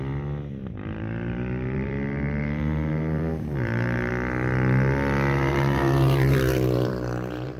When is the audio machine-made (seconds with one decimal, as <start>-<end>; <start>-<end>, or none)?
0.6-4.1; 5.5-7.6